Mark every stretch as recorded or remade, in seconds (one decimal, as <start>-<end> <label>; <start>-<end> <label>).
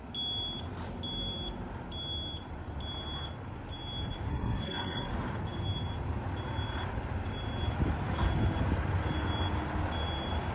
0.0-4.3 recorded; 4.3-5.1 remade; 5.1-10.5 recorded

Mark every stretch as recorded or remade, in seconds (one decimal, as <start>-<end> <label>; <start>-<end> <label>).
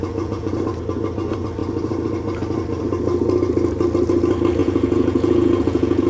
0.0-0.5 remade; 0.5-4.6 recorded; 4.6-6.1 remade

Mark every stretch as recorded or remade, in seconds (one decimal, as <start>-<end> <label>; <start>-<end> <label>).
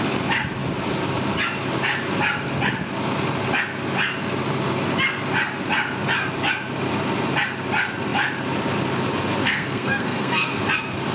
0.0-9.4 recorded; 9.4-10.6 remade; 10.6-11.1 recorded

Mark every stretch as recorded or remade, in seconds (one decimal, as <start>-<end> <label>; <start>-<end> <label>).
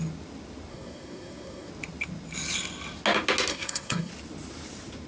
0.0-0.7 recorded; 0.7-1.7 remade; 1.7-3.5 recorded; 3.5-4.1 remade; 4.1-5.1 recorded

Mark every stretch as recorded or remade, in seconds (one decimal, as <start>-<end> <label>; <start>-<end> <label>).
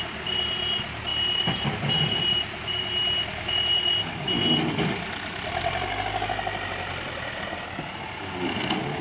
0.0-9.0 recorded